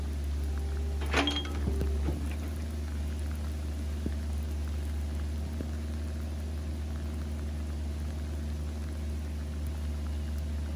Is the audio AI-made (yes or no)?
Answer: no